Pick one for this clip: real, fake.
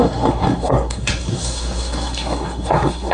fake